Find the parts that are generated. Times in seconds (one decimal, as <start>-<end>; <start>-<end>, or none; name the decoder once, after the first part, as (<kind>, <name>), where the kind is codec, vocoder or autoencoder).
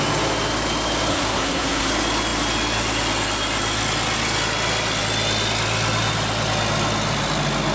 1.1-1.9 (codec, SNAC)